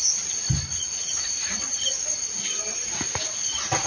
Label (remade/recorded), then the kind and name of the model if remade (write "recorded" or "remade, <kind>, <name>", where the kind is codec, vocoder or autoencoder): recorded